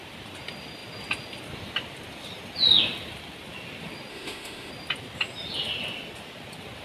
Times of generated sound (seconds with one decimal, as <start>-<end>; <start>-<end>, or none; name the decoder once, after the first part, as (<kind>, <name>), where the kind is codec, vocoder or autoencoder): 4.1-4.7 (autoencoder, DAC-VAE)